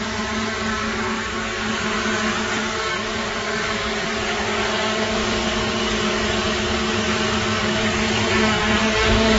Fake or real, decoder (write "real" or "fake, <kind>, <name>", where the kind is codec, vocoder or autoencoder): fake, codec, DAC